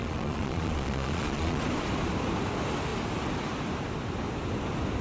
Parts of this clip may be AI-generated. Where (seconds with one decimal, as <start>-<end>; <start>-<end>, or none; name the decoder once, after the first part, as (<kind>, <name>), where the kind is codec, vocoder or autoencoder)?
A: 0.0-1.6 (vocoder, Vocos)